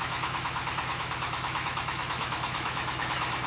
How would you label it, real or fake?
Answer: fake